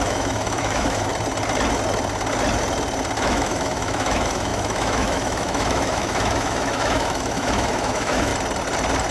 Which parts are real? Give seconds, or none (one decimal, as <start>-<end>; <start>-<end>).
1.1-3.2; 8.3-9.1